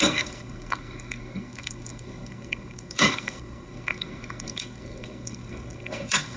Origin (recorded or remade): remade